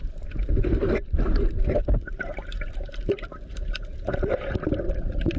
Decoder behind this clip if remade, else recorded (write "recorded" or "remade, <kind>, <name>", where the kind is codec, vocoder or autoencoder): remade, vocoder, BigVGAN v2